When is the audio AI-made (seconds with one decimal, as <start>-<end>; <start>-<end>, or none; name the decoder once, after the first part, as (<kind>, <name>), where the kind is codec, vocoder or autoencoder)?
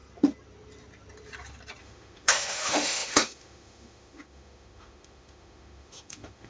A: 1.8-6.5 (autoencoder, DAC-VAE)